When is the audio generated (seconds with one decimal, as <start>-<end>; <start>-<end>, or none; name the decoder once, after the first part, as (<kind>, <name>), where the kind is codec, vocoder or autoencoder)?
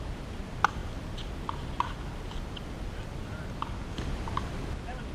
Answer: none